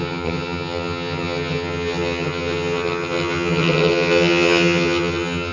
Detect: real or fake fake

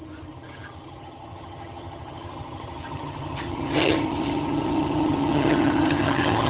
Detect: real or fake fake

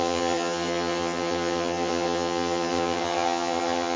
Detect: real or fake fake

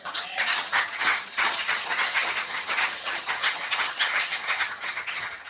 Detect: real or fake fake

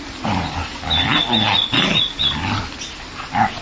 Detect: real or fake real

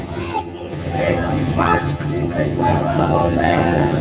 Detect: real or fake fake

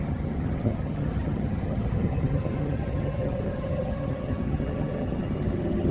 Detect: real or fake fake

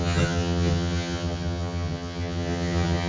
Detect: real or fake fake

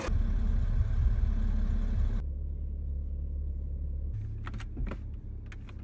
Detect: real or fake real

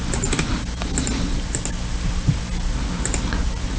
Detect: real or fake real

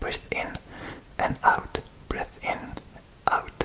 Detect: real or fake real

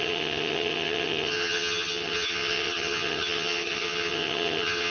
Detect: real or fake fake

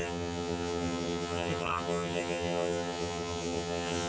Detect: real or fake fake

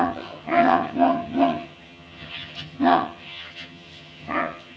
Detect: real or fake fake